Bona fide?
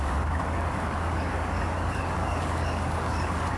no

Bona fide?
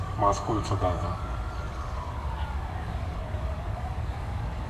no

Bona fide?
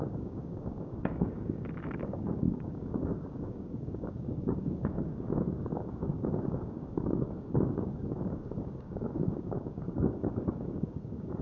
no